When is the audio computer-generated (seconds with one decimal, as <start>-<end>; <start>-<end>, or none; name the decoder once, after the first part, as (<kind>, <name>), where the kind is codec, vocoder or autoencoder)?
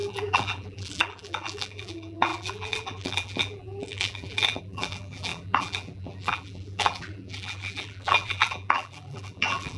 0.0-9.8 (vocoder, BigVGAN v2)